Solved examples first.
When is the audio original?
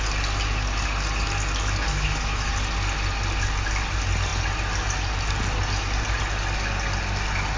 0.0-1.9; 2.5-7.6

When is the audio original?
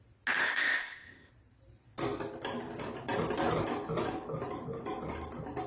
0.0-0.4; 1.3-5.7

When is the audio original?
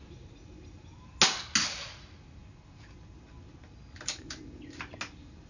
0.0-5.5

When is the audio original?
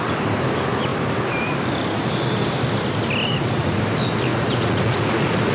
0.0-3.2; 3.8-4.3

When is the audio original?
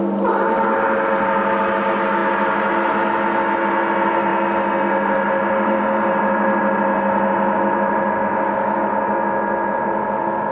0.0-10.5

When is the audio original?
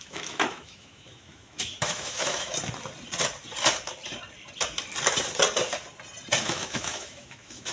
2.5-6.4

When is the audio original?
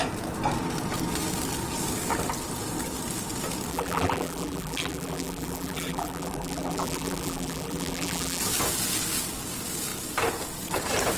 0.0-3.7; 8.4-11.2